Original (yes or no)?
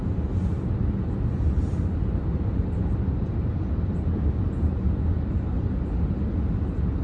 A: yes